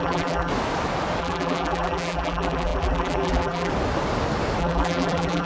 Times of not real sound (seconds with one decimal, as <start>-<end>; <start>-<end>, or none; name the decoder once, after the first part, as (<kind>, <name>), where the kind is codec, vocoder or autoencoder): 0.0-0.5 (vocoder, BigVGAN v2); 1.2-3.7; 4.6-5.5